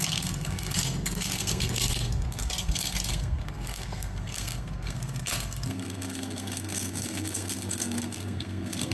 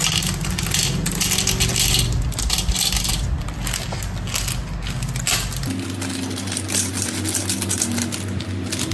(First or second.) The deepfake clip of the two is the first